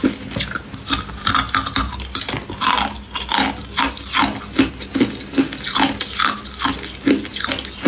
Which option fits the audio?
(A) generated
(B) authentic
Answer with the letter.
B